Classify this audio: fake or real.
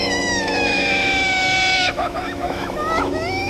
fake